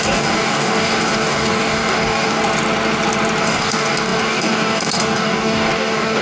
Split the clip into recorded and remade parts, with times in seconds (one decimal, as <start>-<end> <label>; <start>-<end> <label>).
0.0-2.4 remade; 2.4-3.4 recorded; 3.4-6.2 remade